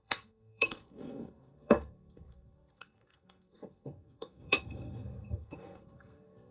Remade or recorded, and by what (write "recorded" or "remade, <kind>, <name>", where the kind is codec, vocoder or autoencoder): remade, codec, SNAC